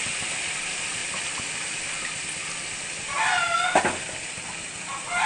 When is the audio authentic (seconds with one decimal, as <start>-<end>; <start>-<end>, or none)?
0.0-5.3